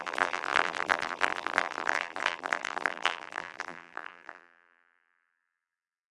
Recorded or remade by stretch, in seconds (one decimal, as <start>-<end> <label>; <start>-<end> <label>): 0.0-6.1 remade